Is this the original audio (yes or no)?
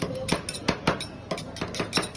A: yes